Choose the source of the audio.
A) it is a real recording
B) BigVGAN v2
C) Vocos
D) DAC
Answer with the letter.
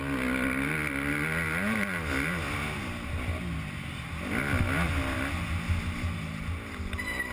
A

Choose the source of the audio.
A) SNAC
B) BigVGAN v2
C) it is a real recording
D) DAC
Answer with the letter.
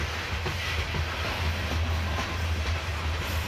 C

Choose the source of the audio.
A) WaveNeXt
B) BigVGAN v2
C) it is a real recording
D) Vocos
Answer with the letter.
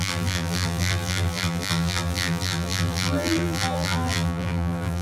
B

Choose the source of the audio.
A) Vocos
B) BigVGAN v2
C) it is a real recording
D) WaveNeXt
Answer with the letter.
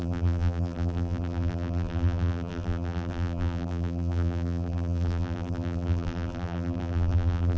B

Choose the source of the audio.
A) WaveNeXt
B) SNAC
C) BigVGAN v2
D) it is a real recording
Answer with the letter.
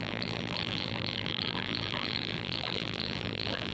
C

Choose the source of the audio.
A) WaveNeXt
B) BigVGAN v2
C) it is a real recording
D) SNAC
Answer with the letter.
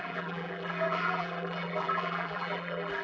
B